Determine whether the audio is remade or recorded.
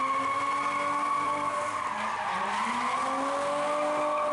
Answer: recorded